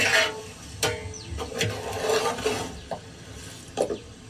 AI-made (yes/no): no